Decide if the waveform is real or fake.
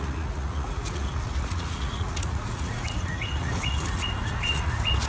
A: fake